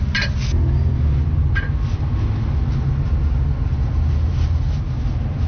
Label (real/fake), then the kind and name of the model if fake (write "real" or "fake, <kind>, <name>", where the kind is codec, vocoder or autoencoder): real